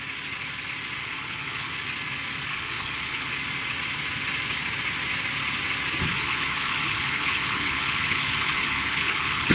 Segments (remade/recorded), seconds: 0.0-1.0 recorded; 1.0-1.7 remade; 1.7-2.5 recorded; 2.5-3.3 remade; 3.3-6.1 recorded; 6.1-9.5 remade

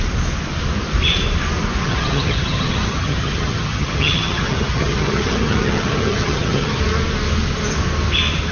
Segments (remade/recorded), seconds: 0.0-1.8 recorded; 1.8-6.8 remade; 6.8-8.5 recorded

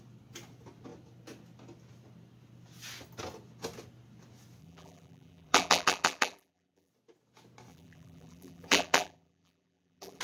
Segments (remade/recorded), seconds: 0.0-4.6 recorded; 4.6-6.9 remade; 6.9-7.7 recorded; 7.7-10.2 remade

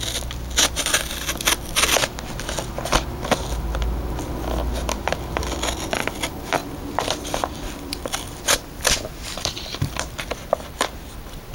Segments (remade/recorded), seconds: 0.0-6.6 recorded; 6.6-10.2 remade; 10.2-11.5 recorded

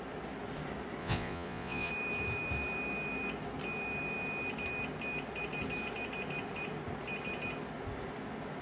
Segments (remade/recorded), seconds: 0.0-1.0 recorded; 1.0-1.9 remade; 1.9-8.6 recorded

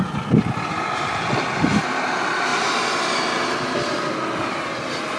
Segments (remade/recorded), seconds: 0.0-5.2 recorded